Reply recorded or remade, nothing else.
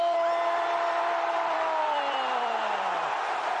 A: remade